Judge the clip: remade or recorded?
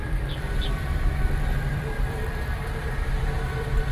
remade